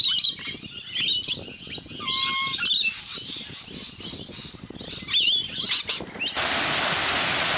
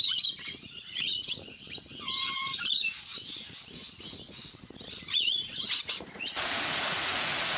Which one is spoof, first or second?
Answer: second